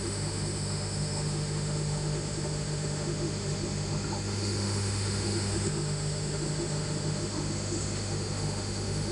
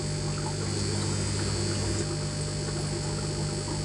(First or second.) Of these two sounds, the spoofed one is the first